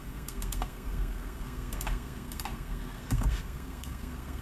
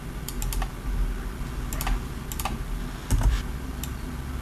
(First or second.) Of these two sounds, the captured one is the second